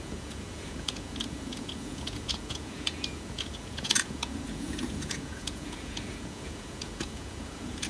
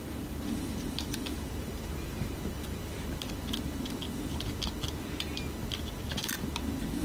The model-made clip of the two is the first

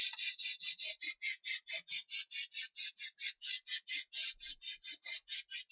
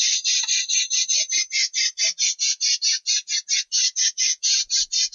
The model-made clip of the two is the second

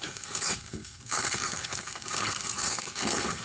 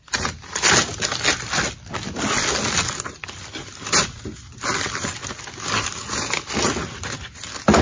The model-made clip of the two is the first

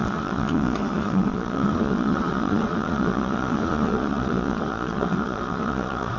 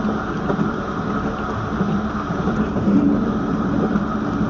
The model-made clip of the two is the first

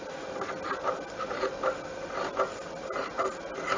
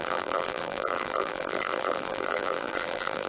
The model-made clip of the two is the second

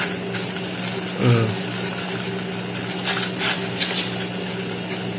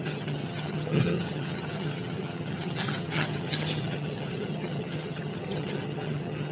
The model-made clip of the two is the second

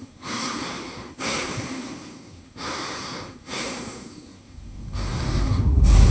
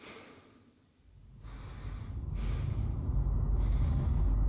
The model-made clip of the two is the first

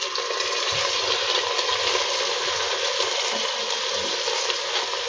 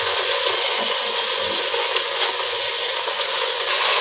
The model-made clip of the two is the second